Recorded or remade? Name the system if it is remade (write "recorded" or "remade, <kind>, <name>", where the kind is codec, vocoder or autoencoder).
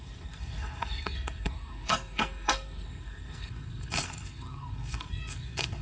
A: remade, codec, SNAC